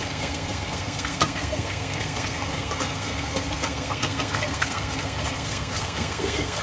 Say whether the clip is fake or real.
fake